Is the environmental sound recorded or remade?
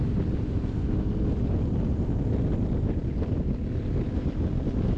recorded